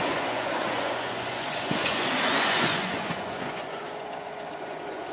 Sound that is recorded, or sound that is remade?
remade